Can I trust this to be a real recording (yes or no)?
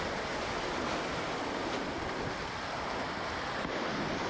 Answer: yes